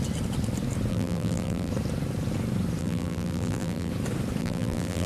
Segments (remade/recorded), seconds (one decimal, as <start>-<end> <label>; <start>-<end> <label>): 0.0-0.9 recorded; 0.9-1.7 remade; 1.7-2.8 recorded; 2.8-3.9 remade; 3.9-4.4 recorded; 4.4-5.1 remade